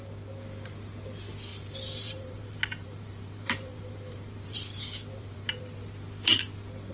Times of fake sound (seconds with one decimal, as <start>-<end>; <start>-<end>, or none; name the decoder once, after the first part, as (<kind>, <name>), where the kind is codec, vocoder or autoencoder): 1.5-5.6 (vocoder, BigVGAN v2)